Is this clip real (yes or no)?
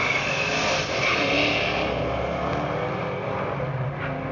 yes